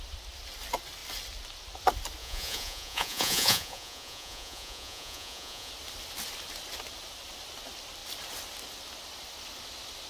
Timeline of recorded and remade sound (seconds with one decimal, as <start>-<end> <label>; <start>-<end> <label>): 0.0-2.2 recorded; 2.2-5.7 remade; 5.7-10.1 recorded